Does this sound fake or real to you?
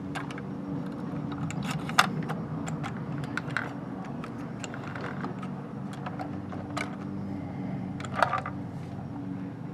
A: real